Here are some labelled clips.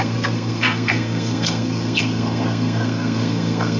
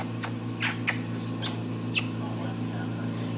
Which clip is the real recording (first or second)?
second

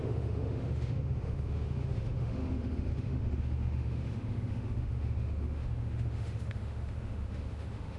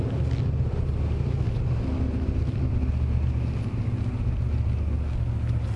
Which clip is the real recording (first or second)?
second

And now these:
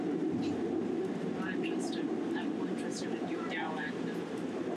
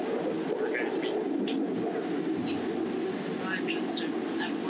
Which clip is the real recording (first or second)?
second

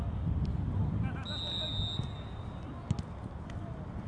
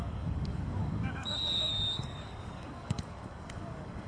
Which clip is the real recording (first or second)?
first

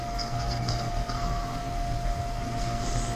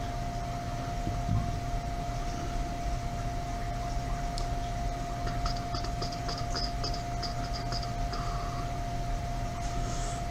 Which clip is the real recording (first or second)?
second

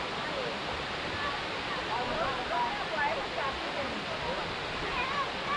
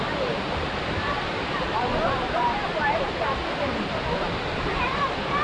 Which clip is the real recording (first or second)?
first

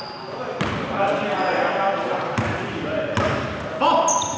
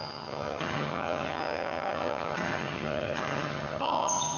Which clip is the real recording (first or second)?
first